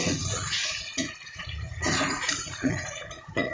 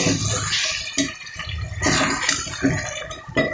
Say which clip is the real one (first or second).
second